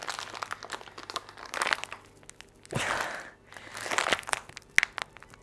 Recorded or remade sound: recorded